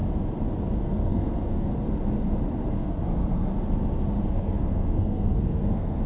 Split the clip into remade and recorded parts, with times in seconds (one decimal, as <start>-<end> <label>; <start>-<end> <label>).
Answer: 0.0-0.8 recorded; 0.8-1.7 remade; 1.7-2.7 recorded; 2.7-3.5 remade; 3.5-4.3 recorded; 4.3-6.1 remade